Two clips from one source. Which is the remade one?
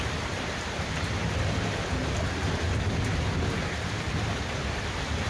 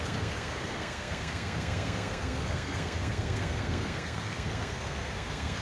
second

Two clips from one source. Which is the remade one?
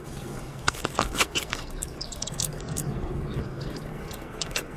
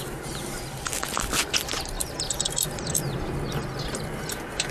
first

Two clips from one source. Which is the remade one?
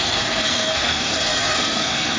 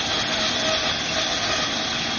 first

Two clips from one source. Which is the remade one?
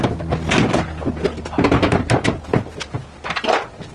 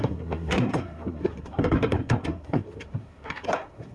second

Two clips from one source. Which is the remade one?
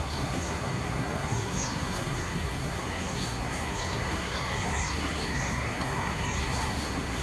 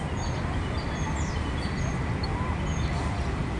first